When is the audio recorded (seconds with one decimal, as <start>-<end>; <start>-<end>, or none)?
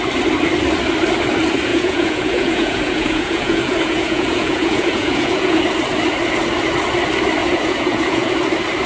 0.0-1.7; 5.6-7.4; 8.3-8.9